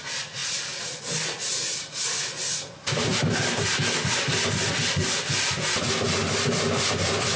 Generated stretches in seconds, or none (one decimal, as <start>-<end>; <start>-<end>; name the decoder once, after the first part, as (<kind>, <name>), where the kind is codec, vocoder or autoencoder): none